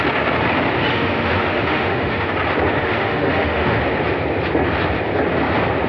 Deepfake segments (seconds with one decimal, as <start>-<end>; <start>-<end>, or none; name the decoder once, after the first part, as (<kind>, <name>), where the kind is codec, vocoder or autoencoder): 0.9-2.3 (autoencoder, DAC-VAE); 2.8-3.8